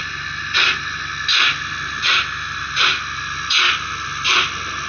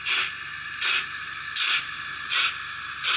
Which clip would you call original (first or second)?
first